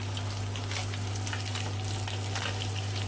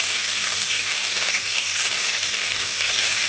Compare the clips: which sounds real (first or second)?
first